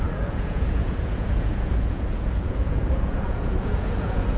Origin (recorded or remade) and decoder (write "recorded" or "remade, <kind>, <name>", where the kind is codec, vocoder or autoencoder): remade, vocoder, Vocos